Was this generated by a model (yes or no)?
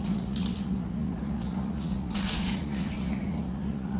yes